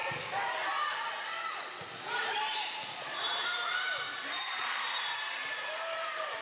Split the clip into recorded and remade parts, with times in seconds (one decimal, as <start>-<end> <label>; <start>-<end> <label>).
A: 0.0-2.5 recorded; 2.5-6.4 remade